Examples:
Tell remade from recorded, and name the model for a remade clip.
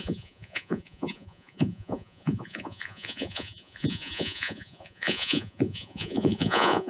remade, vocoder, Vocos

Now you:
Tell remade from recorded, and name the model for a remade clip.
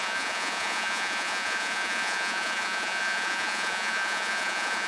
remade, vocoder, Vocos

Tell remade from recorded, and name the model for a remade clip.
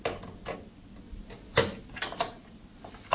recorded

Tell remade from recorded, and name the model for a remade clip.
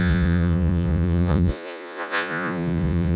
remade, vocoder, Vocos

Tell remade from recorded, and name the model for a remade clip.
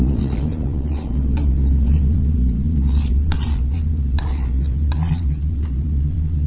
remade, vocoder, Vocos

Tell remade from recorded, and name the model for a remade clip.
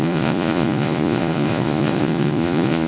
remade, vocoder, Vocos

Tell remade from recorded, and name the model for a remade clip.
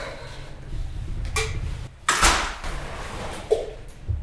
recorded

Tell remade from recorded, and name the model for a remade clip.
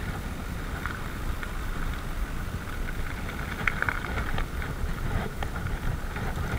recorded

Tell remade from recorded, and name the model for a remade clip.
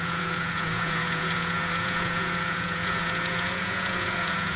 remade, vocoder, Vocos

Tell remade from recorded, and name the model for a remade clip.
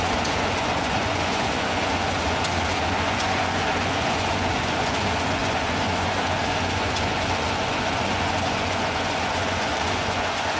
remade, vocoder, Vocos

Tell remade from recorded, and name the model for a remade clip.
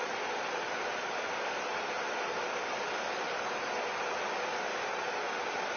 recorded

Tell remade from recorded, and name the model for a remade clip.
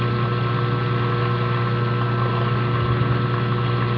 recorded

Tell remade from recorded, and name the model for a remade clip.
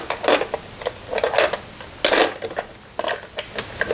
recorded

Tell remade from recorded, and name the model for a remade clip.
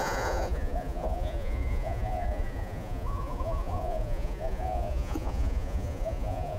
remade, vocoder, Vocos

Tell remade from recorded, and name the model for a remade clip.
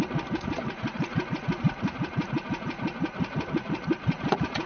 remade, vocoder, Vocos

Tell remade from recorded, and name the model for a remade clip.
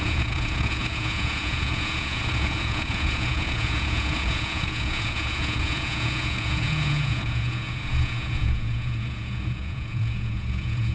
remade, vocoder, Vocos